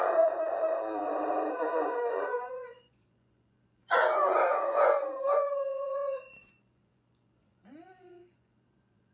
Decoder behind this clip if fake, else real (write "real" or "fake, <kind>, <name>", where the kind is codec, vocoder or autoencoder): fake, vocoder, Vocos